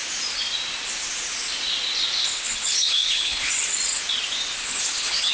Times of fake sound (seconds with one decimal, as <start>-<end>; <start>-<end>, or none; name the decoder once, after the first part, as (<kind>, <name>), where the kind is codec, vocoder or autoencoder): 2.2-3.5 (codec, HILCodec); 4.6-5.3